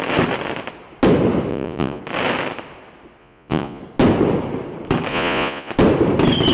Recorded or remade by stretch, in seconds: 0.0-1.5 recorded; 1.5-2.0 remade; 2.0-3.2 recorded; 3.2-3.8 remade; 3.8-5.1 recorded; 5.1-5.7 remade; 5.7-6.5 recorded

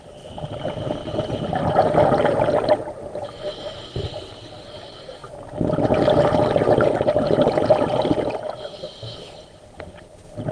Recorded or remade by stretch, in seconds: 0.0-10.5 recorded

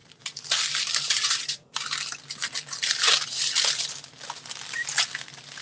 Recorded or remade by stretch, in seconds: 0.0-5.6 recorded

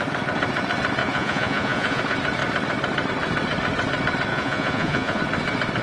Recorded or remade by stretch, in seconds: 0.0-1.0 recorded; 1.0-2.0 remade; 2.0-4.3 recorded; 4.3-5.2 remade; 5.2-5.8 recorded